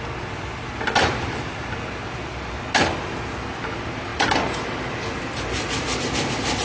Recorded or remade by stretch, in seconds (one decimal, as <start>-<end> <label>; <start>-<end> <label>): 0.0-6.6 recorded